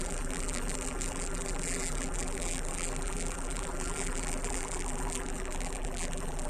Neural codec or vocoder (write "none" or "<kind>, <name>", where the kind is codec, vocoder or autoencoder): vocoder, BigVGAN v2